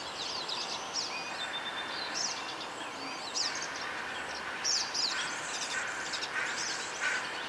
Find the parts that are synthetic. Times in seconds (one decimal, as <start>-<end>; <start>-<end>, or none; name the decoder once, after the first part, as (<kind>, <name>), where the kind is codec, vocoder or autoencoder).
none